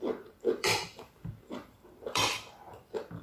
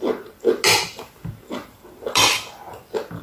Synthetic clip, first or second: first